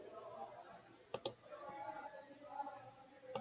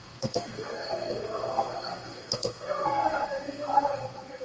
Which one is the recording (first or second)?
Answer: first